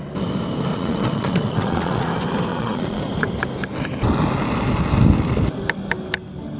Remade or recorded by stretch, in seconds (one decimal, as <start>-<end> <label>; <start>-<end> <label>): 0.0-0.7 recorded; 0.7-2.1 remade; 2.1-2.5 recorded; 2.5-3.0 remade; 3.0-6.6 recorded